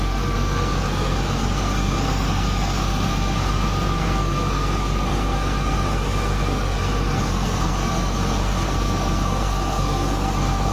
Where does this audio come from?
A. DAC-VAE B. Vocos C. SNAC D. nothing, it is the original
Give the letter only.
C